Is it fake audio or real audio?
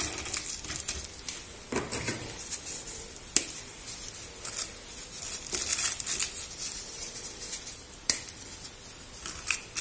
real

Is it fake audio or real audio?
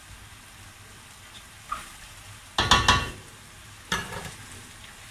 real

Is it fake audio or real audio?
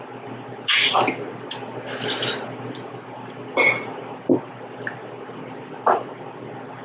real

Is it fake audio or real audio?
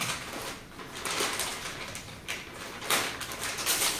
real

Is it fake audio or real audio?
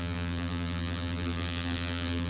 fake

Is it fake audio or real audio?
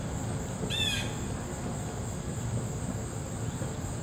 real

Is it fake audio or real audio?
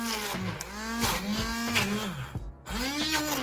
real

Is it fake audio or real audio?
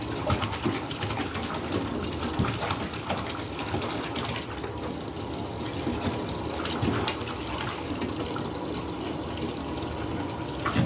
real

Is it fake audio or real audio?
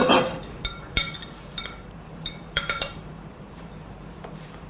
fake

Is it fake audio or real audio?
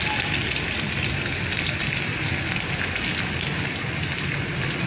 real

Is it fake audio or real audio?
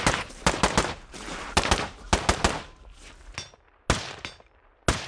real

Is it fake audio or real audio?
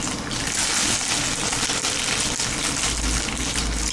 real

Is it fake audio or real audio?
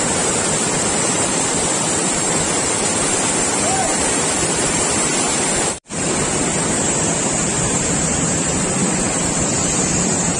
fake